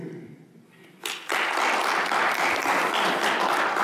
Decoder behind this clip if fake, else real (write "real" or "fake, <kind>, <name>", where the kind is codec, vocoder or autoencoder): fake, vocoder, BigVGAN v2